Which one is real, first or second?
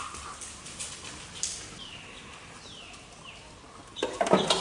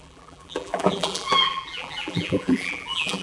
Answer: first